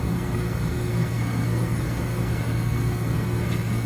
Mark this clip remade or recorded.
remade